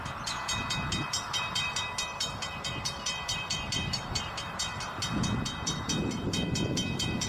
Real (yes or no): no